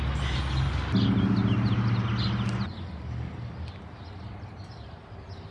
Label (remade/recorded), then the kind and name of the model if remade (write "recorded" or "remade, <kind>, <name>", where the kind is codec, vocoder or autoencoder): recorded